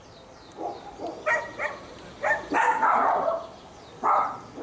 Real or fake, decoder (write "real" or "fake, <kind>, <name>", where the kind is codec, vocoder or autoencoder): fake, vocoder, BigVGAN v2